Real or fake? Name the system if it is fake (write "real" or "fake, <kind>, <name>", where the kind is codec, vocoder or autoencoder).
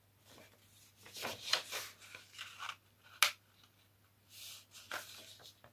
real